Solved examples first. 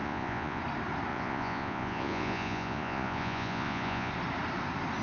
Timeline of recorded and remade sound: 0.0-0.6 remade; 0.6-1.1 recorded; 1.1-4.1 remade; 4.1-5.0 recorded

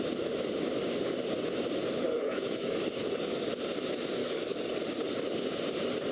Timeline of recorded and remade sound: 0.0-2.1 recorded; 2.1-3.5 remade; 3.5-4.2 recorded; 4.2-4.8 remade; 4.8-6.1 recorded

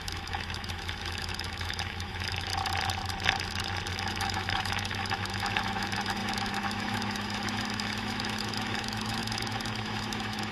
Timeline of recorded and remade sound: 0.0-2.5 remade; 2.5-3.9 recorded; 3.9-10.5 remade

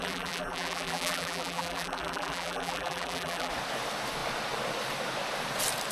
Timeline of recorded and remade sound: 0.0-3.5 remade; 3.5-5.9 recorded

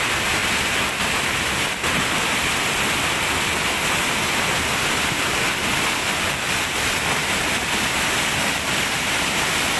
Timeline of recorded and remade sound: 0.0-9.8 recorded